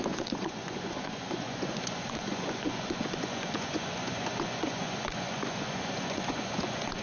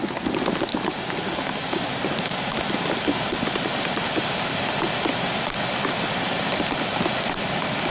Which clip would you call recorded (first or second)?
second